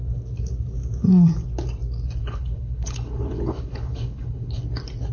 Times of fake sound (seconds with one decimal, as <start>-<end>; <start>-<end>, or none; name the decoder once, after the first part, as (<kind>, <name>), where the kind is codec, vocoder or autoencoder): 2.2-4.6 (codec, HILCodec)